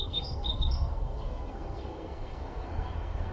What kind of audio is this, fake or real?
fake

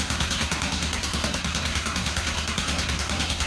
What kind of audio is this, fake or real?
fake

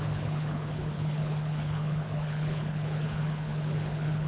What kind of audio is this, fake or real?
fake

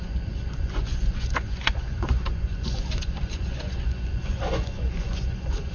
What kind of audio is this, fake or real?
fake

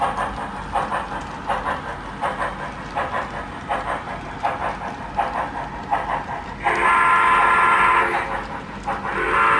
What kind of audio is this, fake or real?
real